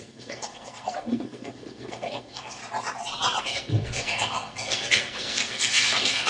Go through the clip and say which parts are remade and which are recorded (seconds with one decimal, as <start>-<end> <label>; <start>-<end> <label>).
0.0-2.6 remade; 2.6-3.4 recorded; 3.4-6.3 remade